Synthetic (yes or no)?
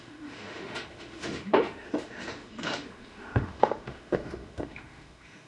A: yes